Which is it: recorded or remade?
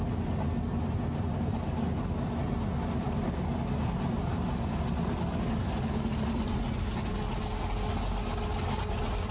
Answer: recorded